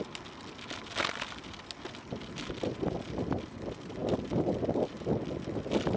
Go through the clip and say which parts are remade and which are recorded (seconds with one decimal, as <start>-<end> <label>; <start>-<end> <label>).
0.0-6.0 recorded